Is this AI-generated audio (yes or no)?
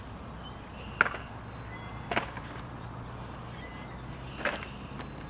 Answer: no